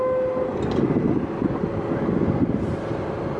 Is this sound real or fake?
real